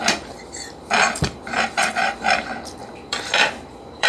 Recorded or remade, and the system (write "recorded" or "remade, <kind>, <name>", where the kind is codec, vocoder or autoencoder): remade, vocoder, BigVGAN v2